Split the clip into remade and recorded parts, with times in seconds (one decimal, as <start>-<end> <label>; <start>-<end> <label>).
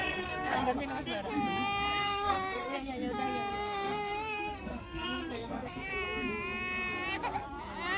0.0-0.7 remade; 0.7-2.0 recorded; 2.0-2.9 remade; 2.9-3.5 recorded; 3.5-5.9 remade; 5.9-8.0 recorded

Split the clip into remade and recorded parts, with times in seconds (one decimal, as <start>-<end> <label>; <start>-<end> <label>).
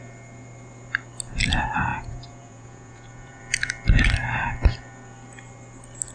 0.0-1.9 recorded; 1.9-3.4 remade; 3.4-6.1 recorded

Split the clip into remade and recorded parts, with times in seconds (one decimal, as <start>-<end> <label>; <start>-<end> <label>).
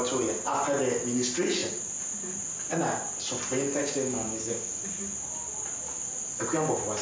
0.0-3.8 recorded; 3.8-4.8 remade; 4.8-7.0 recorded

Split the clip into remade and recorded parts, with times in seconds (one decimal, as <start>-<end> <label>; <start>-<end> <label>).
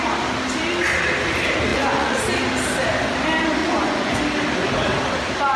0.0-1.7 recorded; 1.7-2.2 remade; 2.2-3.6 recorded; 3.6-4.2 remade; 4.2-5.6 recorded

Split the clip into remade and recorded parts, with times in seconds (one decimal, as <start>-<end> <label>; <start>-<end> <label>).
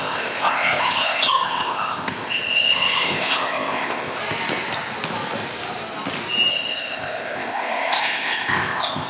0.0-4.2 remade; 4.2-6.5 recorded; 6.5-9.1 remade